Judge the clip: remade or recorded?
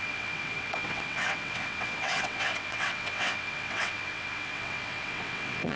remade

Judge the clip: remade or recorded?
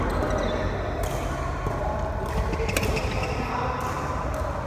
recorded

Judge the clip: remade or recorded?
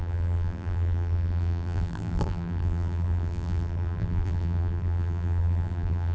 remade